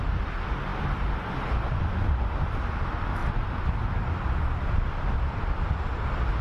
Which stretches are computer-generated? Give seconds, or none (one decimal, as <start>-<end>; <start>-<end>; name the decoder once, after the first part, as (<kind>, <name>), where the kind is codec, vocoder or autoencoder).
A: 0.7-1.5 (vocoder, BigVGAN v2); 3.2-5.8